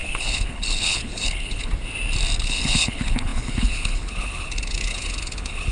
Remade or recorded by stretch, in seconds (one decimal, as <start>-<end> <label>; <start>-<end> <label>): 0.0-1.7 remade; 1.7-2.4 recorded; 2.4-5.7 remade